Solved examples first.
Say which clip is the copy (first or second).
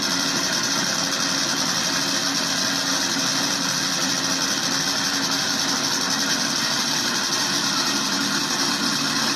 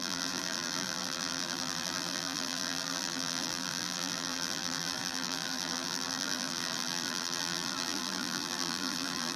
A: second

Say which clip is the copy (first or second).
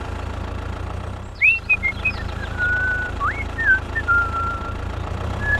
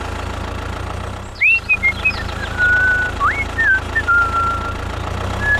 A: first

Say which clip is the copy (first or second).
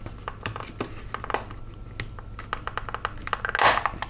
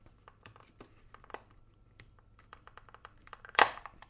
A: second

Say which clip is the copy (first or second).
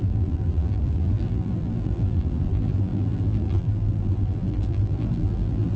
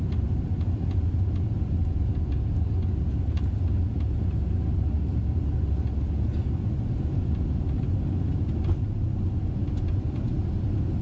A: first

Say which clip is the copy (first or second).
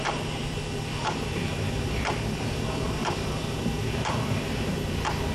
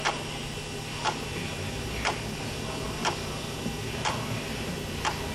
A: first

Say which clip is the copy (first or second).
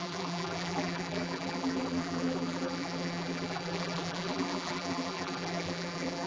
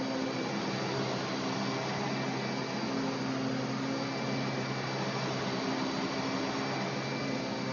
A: first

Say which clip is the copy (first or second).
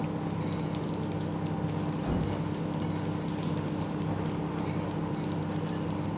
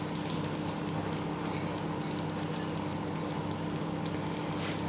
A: first